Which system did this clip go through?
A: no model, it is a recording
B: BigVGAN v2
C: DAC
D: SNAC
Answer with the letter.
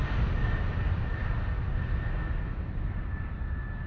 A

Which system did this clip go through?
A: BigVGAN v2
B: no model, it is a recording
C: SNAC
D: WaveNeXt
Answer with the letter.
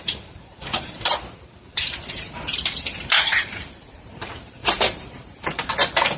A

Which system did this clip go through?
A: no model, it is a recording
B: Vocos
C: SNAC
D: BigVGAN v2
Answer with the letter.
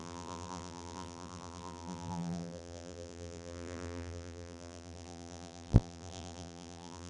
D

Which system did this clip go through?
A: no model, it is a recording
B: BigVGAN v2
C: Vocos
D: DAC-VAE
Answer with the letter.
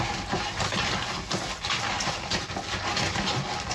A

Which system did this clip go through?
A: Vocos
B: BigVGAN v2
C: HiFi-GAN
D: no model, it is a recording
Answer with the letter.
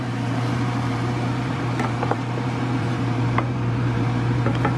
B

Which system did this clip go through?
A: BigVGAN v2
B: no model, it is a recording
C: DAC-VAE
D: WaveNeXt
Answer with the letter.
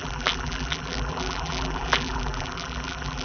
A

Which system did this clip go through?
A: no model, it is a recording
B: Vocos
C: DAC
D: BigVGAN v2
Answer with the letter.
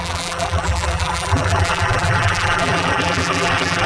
D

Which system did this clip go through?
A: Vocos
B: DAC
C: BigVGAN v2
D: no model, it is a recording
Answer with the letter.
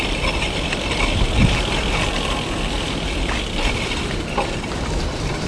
D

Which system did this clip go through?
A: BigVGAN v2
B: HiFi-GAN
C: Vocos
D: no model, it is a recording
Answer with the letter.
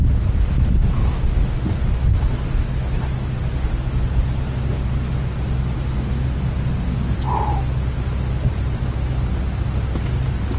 D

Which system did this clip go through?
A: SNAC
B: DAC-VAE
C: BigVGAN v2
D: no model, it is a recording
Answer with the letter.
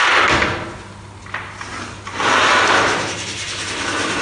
D